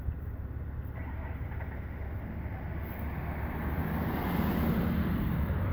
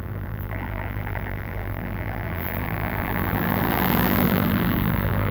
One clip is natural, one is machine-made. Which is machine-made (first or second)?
second